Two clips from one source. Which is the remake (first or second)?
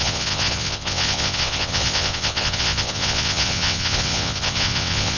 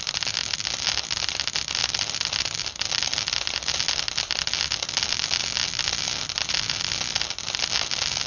first